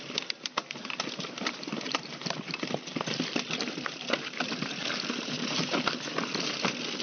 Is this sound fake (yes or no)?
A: no